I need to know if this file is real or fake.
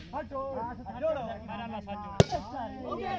real